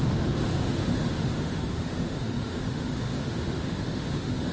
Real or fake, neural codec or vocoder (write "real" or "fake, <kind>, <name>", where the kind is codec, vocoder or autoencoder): fake, autoencoder, DAC-VAE